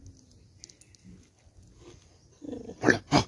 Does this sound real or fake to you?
real